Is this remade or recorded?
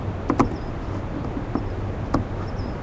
recorded